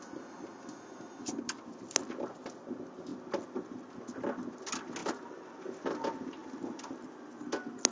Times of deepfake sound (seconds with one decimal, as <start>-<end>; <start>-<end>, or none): 5.0-5.6; 6.4-7.0

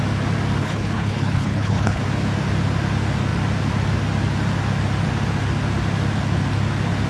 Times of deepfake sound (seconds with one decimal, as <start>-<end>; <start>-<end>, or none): 0.6-2.0